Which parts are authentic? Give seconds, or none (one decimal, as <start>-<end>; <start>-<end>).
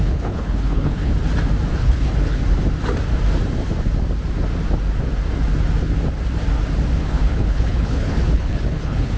1.1-1.7; 2.4-7.0